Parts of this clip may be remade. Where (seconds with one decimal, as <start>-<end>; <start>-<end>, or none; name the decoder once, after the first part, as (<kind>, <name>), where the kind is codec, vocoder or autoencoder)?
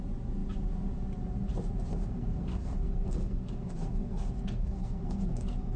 1.9-5.8 (codec, SNAC)